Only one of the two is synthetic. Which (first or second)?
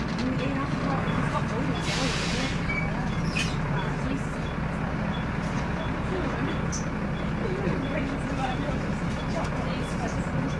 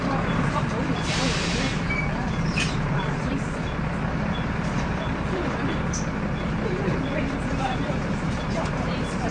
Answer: second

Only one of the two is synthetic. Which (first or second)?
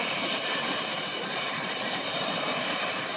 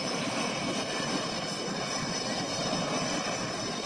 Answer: first